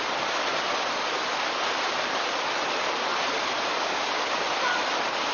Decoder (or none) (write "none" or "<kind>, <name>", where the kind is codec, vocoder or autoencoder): none